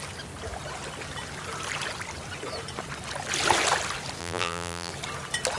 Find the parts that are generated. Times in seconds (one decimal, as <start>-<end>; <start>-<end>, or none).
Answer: 4.2-4.9